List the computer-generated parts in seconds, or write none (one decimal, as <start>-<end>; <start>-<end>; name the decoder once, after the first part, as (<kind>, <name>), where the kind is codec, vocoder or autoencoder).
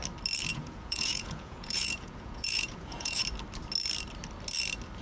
0.5-3.2 (vocoder, Vocos)